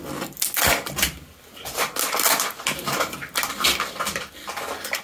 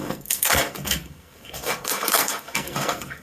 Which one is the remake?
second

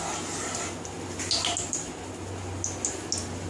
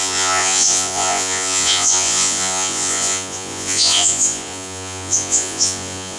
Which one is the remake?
second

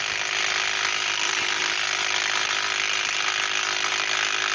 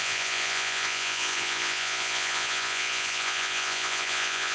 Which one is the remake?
second